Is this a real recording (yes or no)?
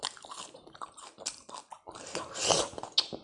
yes